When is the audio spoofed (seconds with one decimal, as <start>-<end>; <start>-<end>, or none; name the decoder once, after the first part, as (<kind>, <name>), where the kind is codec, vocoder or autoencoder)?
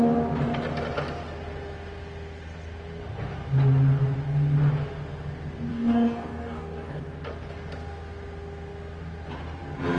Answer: 5.7-7.0 (codec, DAC)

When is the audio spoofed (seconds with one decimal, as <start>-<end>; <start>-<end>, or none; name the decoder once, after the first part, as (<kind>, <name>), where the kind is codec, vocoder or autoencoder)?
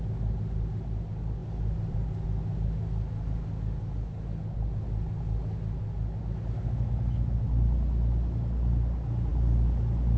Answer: none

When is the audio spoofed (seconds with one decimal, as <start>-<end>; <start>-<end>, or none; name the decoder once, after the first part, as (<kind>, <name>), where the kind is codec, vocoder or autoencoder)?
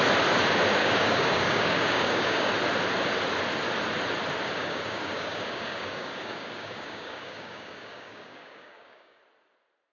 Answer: 0.8-2.5 (codec, DAC); 4.6-9.2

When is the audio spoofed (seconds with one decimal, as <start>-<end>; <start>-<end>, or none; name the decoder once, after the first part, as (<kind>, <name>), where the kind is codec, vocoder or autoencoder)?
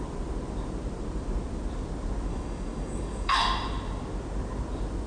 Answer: 2.3-3.4 (codec, DAC)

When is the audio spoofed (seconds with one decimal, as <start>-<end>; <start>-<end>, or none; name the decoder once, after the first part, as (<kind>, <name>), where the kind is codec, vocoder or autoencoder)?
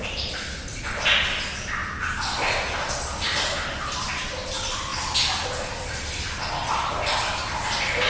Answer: none